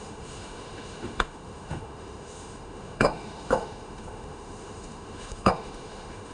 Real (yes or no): no